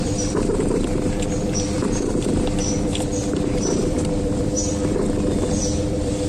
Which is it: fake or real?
fake